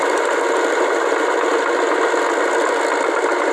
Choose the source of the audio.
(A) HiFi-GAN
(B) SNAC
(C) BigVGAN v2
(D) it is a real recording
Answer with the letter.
D